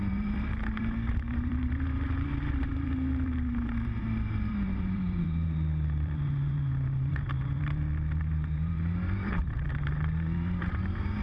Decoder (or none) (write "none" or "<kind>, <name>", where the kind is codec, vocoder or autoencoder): vocoder, BigVGAN v2